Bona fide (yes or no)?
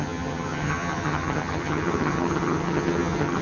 no